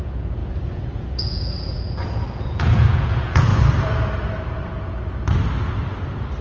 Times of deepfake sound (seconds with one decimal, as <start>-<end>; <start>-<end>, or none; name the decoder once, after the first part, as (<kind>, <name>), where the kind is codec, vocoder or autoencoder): 0.0-3.5 (vocoder, Vocos)